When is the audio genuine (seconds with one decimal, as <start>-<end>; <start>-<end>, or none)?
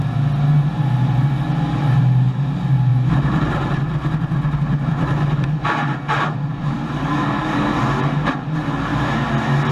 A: 0.0-9.7